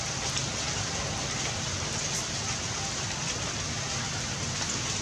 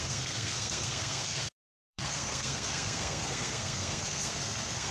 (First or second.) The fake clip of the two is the second